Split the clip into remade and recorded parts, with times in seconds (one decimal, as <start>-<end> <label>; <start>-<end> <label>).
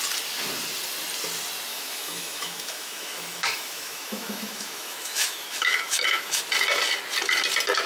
0.0-1.7 recorded; 1.7-6.4 remade; 6.4-7.9 recorded